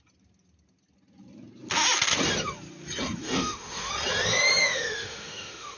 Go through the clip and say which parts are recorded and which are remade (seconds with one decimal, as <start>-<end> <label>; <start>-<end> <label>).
0.0-3.2 recorded; 3.2-3.9 remade; 3.9-4.6 recorded; 4.6-5.8 remade